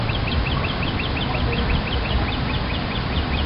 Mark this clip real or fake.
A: real